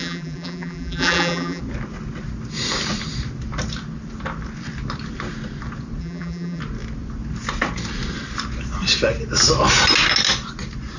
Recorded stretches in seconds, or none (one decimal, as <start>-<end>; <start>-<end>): 1.6-6.0; 6.6-11.0